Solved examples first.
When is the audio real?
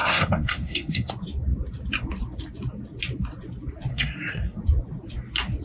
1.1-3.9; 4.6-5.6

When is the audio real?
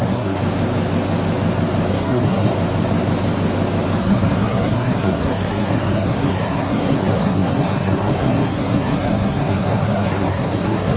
0.4-1.9; 2.5-4.0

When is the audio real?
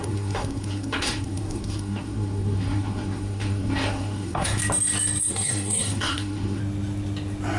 4.6-5.3; 6.6-7.6